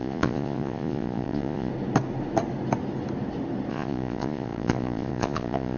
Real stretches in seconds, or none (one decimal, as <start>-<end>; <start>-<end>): 1.7-3.7